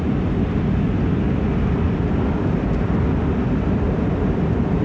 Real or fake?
real